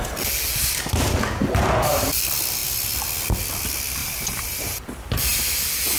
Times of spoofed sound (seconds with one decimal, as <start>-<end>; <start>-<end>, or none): 1.4-2.1; 4.0-4.8